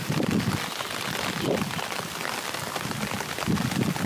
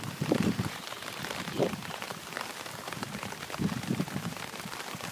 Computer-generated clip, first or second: second